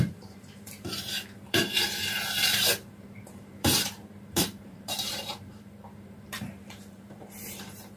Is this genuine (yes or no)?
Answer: no